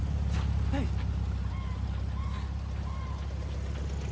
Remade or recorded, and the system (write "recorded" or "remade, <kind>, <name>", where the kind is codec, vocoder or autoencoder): recorded